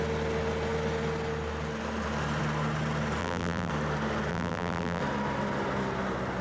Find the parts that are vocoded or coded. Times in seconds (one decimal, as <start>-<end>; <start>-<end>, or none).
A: 3.2-3.7; 4.3-5.0